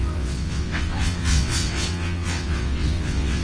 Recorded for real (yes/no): no